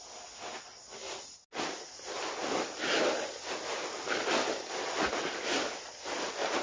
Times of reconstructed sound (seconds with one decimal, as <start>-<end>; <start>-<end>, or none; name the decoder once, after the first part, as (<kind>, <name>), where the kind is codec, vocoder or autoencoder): none